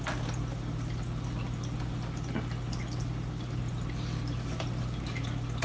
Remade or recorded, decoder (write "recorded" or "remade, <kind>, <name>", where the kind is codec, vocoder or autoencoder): recorded